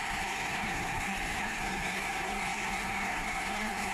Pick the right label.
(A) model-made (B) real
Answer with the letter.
A